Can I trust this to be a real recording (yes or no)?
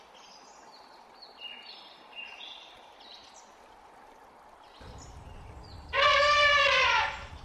yes